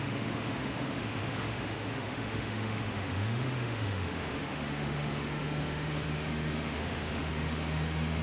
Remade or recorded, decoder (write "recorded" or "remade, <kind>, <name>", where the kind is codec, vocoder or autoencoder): remade, autoencoder, DAC-VAE